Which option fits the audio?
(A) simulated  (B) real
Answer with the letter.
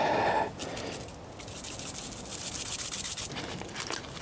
B